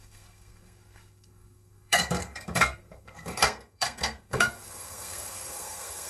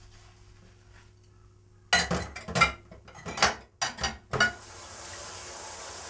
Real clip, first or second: second